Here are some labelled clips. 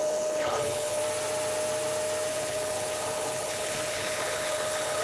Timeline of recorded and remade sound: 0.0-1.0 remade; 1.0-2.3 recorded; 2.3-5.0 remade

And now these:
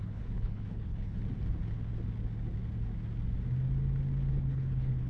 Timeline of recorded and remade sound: 0.0-1.2 remade; 1.2-4.3 recorded; 4.3-5.1 remade

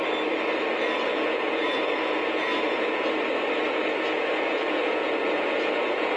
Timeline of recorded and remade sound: 0.0-1.1 recorded; 1.1-3.1 remade; 3.1-3.8 recorded; 3.8-6.2 remade